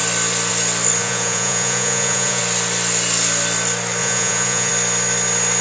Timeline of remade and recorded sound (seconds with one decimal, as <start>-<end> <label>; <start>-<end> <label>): 0.0-1.0 recorded; 1.0-2.4 remade; 2.4-4.0 recorded; 4.0-4.7 remade; 4.7-5.6 recorded